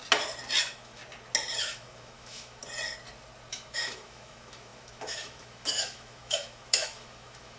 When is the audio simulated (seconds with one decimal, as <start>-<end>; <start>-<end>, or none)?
0.6-1.0; 1.6-2.6; 3.5-7.6